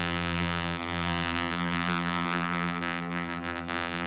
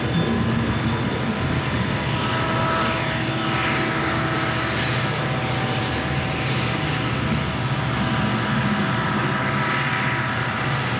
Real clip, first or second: second